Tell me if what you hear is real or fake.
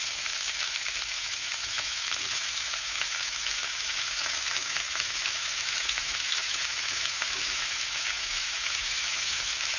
fake